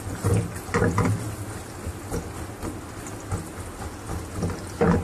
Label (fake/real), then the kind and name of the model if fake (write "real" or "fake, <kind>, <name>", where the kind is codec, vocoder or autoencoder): real